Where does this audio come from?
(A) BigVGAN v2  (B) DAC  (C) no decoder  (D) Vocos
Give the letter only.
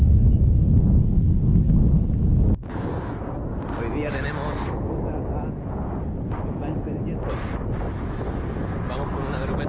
C